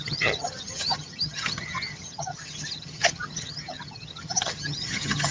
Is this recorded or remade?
remade